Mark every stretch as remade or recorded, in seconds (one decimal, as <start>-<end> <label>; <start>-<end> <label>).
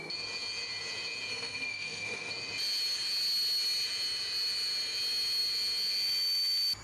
0.0-1.3 recorded; 1.3-2.3 remade; 2.3-6.8 recorded